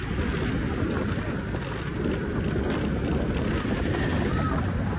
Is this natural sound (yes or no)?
yes